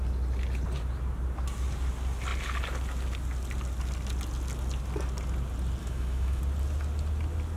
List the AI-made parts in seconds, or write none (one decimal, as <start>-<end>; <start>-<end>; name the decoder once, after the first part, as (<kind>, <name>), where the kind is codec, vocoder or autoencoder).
5.8-6.4 (autoencoder, DAC-VAE)